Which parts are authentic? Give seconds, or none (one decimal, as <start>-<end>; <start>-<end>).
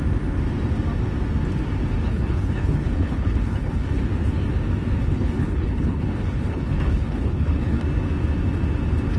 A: 0.0-2.1; 4.0-5.0; 7.8-9.2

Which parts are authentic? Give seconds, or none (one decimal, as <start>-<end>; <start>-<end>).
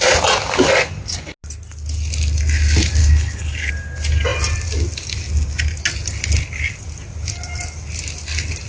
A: 0.0-3.0; 3.7-8.7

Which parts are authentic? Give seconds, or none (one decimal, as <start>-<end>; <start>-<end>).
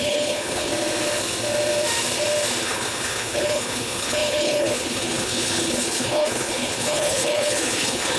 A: 0.7-2.6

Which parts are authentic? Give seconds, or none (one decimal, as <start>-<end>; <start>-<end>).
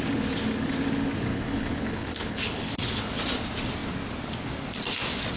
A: 0.0-1.3; 3.2-5.4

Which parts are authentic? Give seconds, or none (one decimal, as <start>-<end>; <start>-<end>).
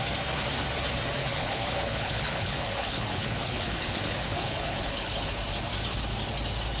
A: 0.0-1.2; 5.3-6.8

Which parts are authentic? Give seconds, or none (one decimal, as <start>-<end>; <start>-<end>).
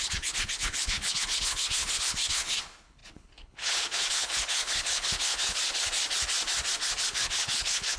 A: 5.6-7.1